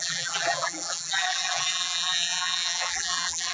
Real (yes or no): no